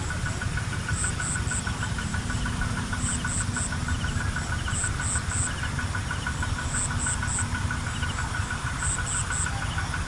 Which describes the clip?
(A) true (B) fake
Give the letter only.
A